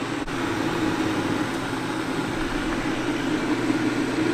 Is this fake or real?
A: real